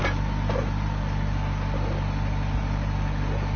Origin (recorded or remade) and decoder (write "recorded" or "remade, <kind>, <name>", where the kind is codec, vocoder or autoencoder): recorded